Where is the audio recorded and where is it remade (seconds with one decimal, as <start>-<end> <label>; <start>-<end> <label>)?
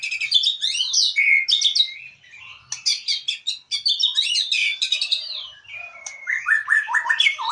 0.0-4.7 recorded; 4.7-7.5 remade